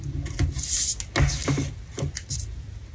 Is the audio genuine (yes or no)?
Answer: yes